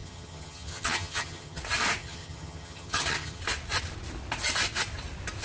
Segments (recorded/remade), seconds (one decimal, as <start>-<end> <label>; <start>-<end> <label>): 0.0-1.6 remade; 1.6-2.0 recorded; 2.0-3.4 remade; 3.4-5.4 recorded